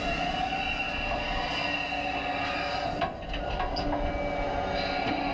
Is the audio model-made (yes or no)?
no